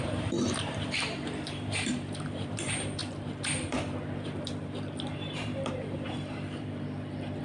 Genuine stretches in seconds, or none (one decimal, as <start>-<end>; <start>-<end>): none

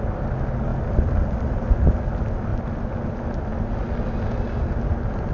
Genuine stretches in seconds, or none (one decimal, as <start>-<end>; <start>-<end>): 0.0-0.7; 1.7-5.3

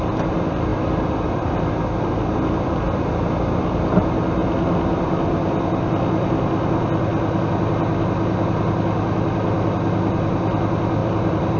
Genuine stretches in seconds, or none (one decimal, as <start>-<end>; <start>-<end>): 0.0-0.7; 1.6-11.0